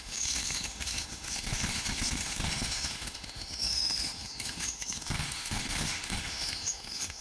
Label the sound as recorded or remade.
remade